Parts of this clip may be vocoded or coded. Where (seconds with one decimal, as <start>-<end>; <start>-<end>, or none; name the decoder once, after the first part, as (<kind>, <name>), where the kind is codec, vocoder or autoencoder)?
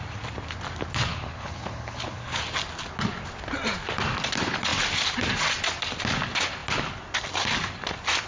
1.1-2.4 (codec, HILCodec)